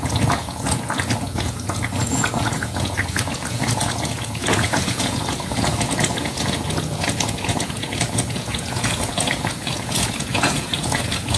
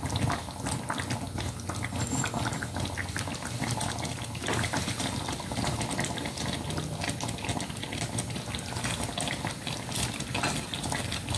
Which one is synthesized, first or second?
first